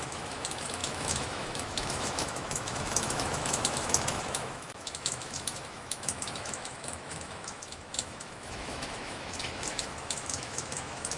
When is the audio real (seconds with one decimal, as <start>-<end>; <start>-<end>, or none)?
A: none